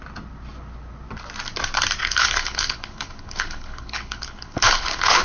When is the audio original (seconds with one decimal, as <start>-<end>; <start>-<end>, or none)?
0.0-2.0